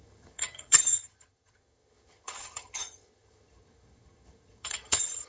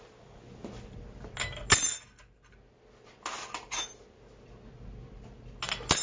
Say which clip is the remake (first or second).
first